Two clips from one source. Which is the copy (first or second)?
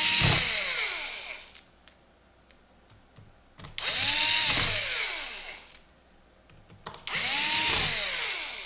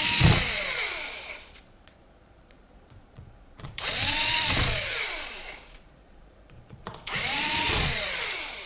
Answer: second